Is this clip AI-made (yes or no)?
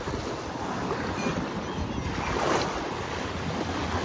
no